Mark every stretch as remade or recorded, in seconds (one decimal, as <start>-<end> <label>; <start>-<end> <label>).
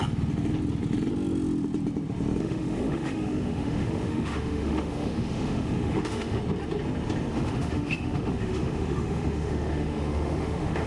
0.0-2.4 recorded; 2.4-6.4 remade; 6.4-7.3 recorded; 7.3-10.9 remade